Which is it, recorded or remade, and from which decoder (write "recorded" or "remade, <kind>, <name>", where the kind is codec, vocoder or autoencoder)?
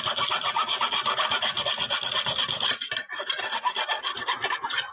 recorded